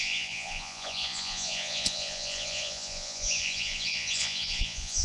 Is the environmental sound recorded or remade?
remade